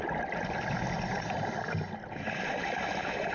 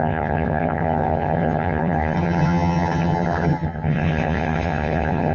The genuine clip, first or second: first